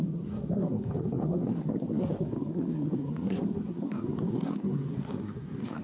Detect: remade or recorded remade